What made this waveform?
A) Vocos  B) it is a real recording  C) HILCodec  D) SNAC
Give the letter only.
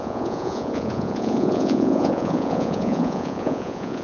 A